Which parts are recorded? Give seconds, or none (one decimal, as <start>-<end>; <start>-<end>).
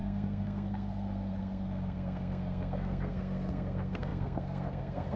none